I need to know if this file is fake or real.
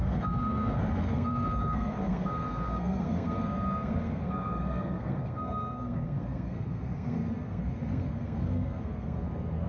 fake